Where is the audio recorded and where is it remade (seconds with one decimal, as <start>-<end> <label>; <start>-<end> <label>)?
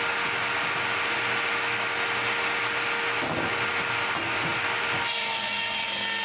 0.0-6.2 recorded